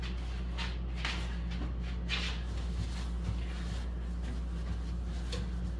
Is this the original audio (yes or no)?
yes